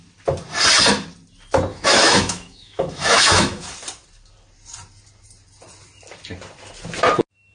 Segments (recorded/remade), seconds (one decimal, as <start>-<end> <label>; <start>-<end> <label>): 0.0-1.7 recorded; 1.7-3.7 remade; 3.7-7.5 recorded